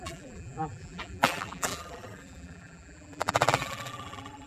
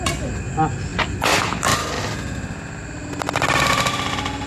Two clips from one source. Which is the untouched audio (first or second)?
second